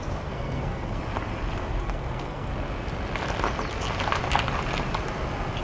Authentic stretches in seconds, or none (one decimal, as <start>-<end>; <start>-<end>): 1.0-1.8; 2.5-5.6